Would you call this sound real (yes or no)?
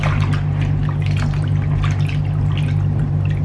yes